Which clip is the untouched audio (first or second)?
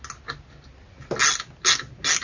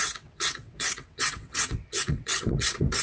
first